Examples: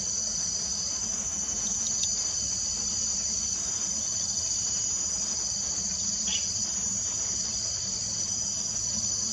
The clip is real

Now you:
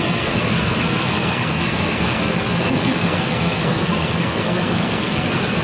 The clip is fake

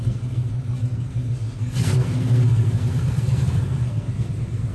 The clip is fake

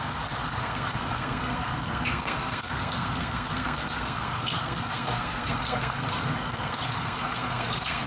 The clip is fake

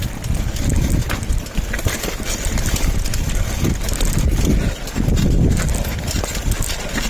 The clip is real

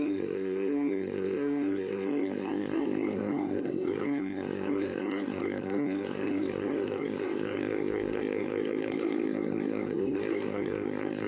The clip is fake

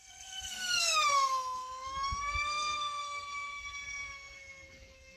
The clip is fake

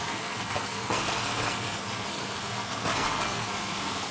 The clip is fake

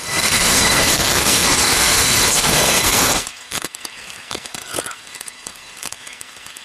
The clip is fake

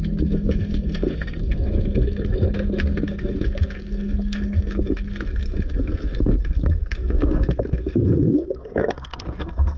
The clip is fake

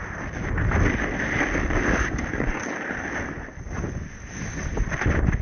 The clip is real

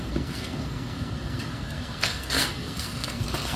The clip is fake